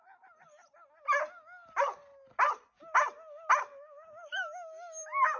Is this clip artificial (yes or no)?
no